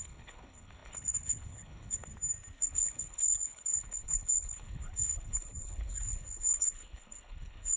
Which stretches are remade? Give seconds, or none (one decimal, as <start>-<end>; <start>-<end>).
0.0-2.1; 2.6-7.8